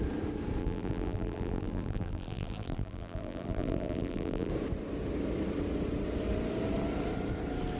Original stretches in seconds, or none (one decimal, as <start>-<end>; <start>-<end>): 0.0-0.6; 4.5-7.8